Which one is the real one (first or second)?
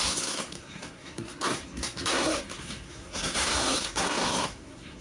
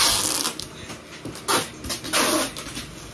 second